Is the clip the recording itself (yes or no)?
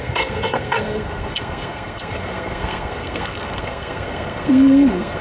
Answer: no